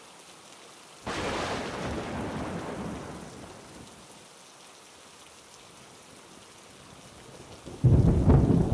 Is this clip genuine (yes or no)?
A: yes